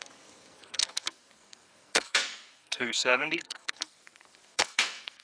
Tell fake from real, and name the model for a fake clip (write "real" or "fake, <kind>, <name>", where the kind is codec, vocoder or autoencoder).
fake, codec, SNAC